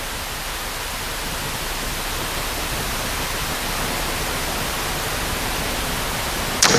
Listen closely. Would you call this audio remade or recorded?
recorded